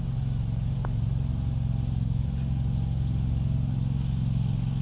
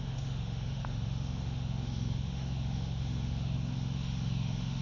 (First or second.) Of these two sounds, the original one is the first